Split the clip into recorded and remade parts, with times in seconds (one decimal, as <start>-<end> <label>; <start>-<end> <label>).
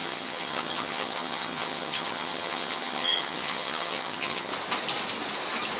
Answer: 0.0-4.5 remade; 4.5-5.8 recorded